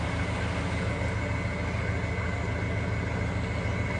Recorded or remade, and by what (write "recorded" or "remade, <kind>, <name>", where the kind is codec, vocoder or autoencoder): recorded